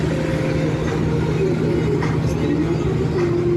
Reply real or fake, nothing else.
real